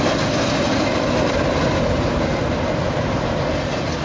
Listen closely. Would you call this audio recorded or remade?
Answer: recorded